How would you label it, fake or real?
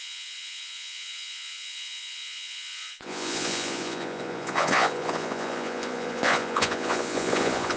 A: fake